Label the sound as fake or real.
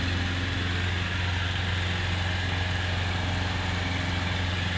real